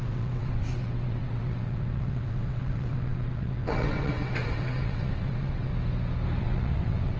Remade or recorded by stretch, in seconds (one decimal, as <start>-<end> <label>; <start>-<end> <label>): 0.0-5.7 remade; 5.7-6.4 recorded; 6.4-7.2 remade